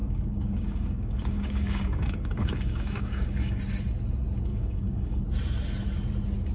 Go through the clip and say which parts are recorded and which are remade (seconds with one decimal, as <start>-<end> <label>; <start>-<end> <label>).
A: 0.0-3.6 remade; 3.6-4.5 recorded; 4.5-5.2 remade; 5.2-6.5 recorded